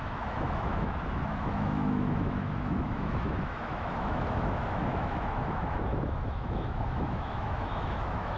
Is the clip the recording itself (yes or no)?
no